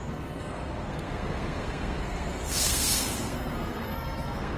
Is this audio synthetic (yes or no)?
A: yes